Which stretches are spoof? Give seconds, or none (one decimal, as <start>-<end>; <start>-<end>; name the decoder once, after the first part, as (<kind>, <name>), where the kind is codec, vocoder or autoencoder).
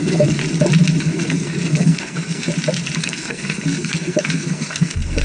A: 0.0-0.4 (codec, SNAC); 1.0-2.5; 3.0-5.2